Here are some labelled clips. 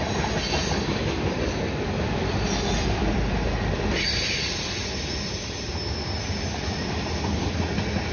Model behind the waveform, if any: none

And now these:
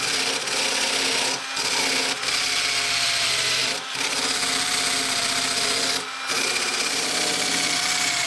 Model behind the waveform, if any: none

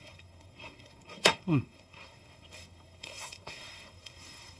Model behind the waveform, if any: codec, SNAC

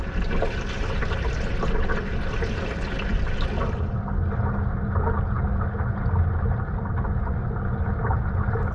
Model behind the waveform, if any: none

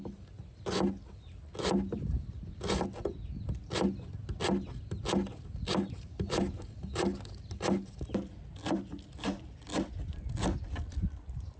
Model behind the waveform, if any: none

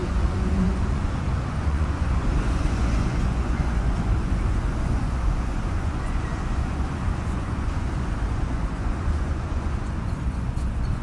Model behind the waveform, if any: vocoder, Vocos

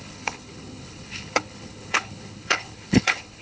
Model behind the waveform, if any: codec, HILCodec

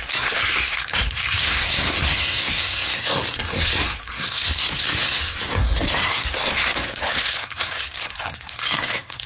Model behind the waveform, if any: codec, SNAC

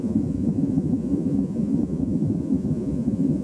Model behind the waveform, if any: vocoder, Vocos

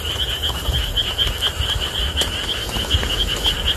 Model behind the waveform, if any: none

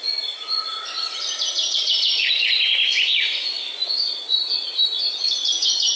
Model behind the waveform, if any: vocoder, Vocos